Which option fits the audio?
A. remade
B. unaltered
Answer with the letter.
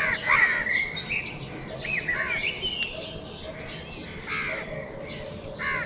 B